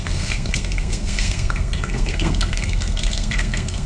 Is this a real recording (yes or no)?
no